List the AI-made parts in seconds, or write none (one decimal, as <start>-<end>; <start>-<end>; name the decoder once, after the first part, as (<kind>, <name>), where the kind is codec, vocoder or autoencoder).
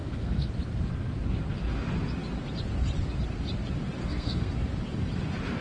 0.0-0.5 (codec, SNAC); 4.0-4.5